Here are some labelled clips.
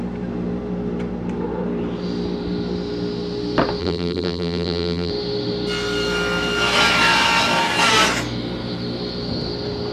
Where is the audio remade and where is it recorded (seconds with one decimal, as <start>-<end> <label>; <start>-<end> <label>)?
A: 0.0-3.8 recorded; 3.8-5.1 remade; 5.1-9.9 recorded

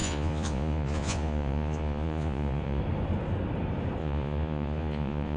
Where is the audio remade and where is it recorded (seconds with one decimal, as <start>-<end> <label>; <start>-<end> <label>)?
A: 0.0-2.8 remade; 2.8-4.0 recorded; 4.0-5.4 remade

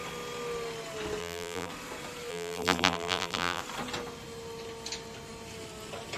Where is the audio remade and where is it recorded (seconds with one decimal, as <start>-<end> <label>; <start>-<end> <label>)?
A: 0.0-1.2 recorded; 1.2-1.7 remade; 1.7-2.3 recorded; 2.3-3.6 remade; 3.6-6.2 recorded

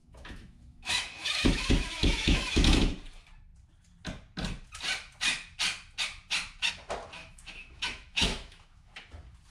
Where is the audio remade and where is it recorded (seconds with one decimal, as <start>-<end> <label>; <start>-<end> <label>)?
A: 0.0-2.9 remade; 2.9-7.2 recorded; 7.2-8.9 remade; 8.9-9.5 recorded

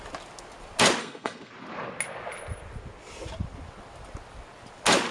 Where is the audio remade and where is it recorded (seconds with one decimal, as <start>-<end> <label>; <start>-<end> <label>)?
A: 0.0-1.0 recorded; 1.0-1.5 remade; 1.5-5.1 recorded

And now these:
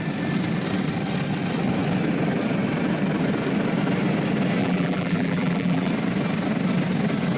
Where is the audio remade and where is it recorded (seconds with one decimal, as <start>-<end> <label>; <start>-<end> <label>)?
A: 0.0-4.6 recorded; 4.6-5.9 remade; 5.9-7.4 recorded